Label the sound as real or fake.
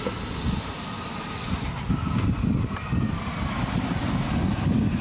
real